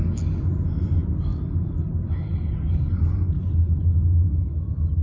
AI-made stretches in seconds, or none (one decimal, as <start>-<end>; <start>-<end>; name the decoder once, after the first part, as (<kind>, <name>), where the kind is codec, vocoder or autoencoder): none